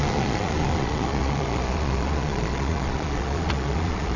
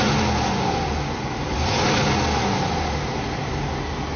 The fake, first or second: first